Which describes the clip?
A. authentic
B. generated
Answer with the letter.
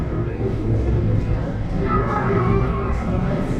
B